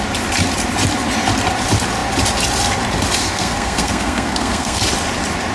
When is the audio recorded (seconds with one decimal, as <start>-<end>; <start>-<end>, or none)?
0.0-3.2; 4.8-5.5

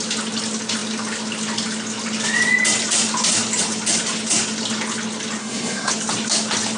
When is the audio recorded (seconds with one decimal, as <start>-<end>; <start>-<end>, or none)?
0.0-5.4; 5.9-6.8

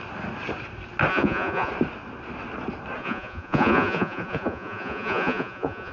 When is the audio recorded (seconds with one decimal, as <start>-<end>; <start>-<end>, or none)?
0.0-1.1; 1.7-3.0

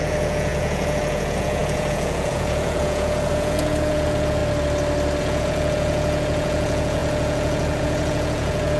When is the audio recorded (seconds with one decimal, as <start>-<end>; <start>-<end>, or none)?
4.4-5.2

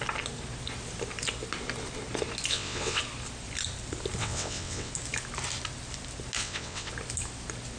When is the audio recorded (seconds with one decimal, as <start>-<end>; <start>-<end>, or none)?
0.0-2.5; 3.0-4.2; 4.9-6.4; 6.9-7.8

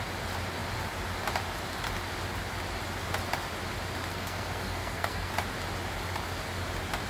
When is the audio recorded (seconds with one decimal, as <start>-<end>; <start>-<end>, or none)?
0.0-4.1; 5.3-7.1

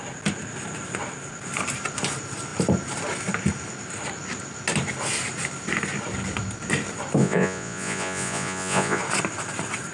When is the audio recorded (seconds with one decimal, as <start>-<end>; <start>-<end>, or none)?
0.0-7.2; 9.0-9.9